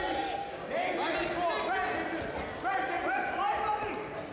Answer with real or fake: real